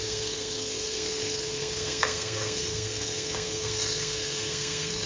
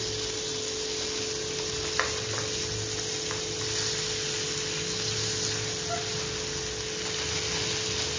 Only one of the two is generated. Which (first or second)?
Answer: first